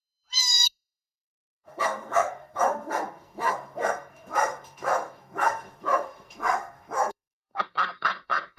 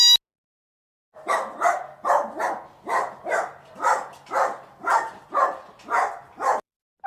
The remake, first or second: first